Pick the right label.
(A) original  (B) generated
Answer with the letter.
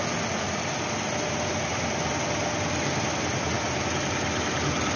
A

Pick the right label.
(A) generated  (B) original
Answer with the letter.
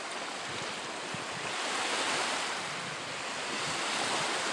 B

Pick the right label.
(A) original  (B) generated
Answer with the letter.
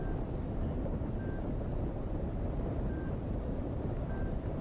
A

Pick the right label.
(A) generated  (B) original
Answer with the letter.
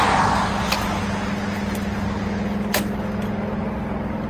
B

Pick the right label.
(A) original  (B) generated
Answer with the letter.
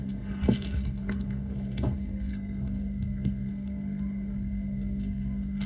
B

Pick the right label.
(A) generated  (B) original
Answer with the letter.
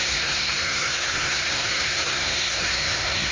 A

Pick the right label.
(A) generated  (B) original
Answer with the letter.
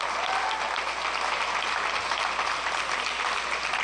B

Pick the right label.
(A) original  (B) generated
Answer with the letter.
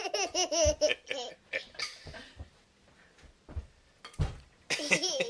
A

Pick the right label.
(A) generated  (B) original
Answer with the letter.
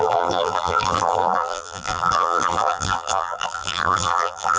A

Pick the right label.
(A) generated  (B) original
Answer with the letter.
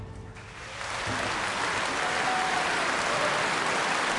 B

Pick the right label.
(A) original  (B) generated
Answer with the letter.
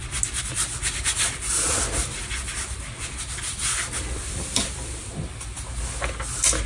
A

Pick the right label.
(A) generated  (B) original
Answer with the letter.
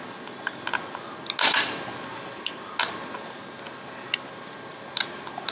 B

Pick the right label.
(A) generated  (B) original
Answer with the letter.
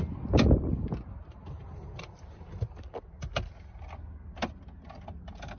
B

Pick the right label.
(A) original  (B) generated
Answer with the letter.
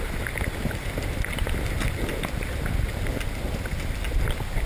A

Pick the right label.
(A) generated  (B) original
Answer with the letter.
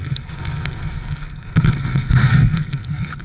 A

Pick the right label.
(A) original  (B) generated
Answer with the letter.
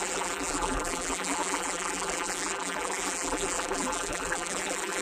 B